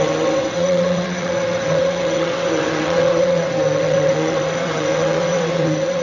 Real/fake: fake